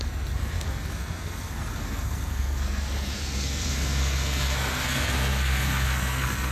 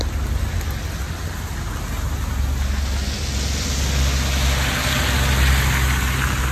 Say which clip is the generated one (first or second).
first